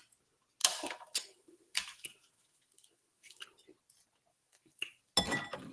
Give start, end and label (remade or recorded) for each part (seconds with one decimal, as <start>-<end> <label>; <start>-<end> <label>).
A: 0.0-0.6 recorded; 0.6-3.4 remade; 3.4-4.3 recorded; 4.3-5.0 remade; 5.0-5.7 recorded